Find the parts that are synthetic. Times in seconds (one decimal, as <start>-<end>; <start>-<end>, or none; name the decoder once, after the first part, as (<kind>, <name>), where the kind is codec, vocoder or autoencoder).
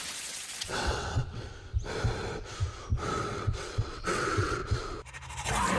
0.0-1.5 (vocoder, WaveNeXt); 3.2-4.6